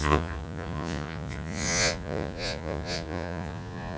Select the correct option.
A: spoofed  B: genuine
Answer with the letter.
A